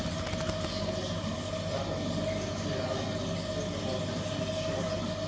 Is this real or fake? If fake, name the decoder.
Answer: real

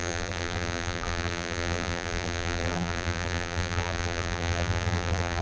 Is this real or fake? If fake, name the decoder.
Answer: fake, vocoder, BigVGAN v2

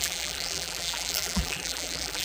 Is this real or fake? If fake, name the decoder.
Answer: fake, vocoder, BigVGAN v2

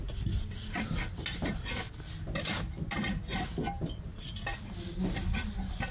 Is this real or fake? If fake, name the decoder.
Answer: real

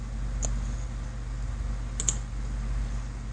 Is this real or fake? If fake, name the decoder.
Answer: real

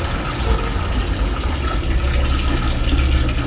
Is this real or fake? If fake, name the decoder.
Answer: real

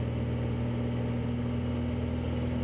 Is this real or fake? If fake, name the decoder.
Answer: real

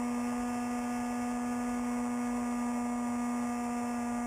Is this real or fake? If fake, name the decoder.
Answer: real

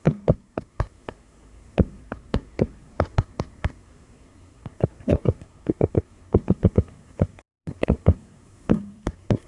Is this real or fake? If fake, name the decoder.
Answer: fake, codec, SNAC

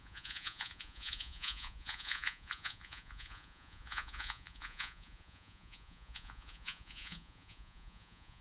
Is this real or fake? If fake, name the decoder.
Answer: fake, vocoder, Vocos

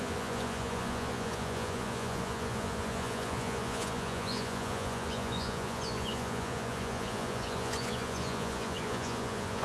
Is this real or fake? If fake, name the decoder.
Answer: fake, vocoder, Vocos